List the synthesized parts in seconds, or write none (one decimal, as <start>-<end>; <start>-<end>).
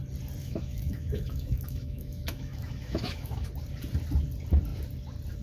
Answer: 0.4-3.5